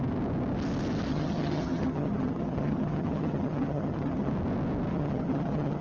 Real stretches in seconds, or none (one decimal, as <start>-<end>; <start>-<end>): 0.0-1.1; 4.3-4.9